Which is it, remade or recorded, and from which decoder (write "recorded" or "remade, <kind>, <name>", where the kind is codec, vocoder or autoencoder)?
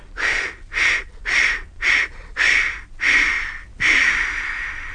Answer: recorded